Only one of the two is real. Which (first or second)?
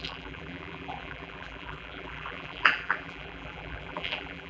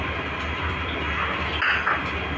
second